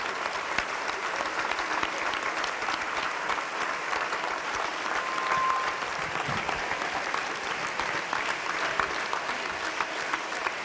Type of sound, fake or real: fake